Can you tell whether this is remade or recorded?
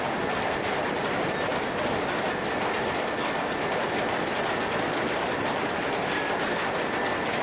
recorded